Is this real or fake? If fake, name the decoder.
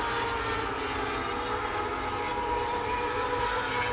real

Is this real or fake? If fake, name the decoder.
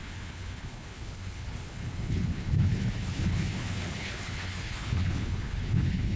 fake, codec, HILCodec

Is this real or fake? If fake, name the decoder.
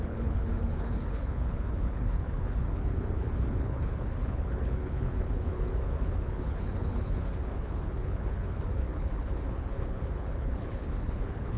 fake, codec, HILCodec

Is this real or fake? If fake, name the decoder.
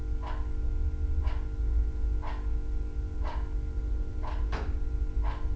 real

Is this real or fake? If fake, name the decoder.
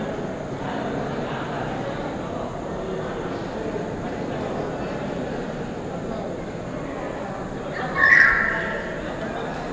real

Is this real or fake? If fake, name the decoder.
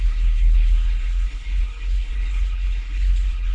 fake, codec, HILCodec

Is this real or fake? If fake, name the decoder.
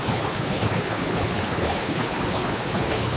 fake, codec, HILCodec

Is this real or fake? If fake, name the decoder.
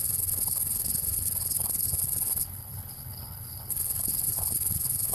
fake, codec, HILCodec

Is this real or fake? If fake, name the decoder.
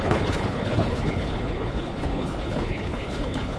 fake, codec, HILCodec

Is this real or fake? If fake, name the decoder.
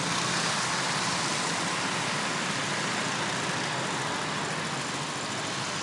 real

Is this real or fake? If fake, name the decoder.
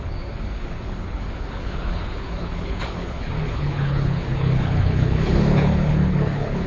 fake, codec, HILCodec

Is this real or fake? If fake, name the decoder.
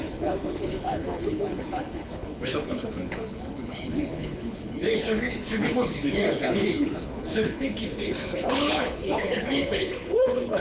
fake, codec, HILCodec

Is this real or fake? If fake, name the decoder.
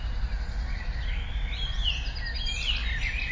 real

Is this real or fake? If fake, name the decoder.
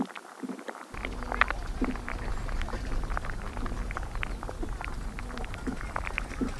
real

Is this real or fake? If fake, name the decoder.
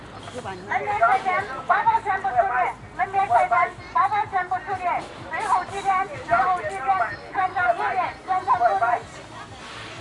real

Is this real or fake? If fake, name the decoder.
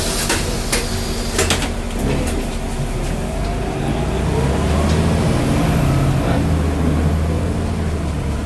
real